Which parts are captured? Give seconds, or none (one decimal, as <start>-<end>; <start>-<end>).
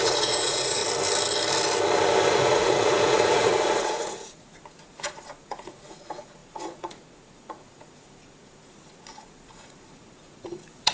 0.8-2.3